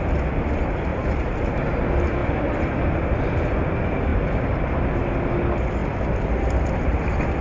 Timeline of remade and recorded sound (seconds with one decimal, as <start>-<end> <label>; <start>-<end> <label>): 0.0-0.9 recorded; 0.9-1.5 remade; 1.5-2.2 recorded; 2.2-2.8 remade; 2.8-4.1 recorded; 4.1-4.7 remade; 4.7-7.4 recorded